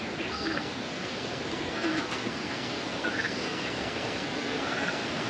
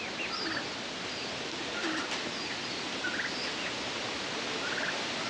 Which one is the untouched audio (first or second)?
second